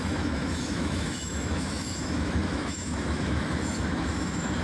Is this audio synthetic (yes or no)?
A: yes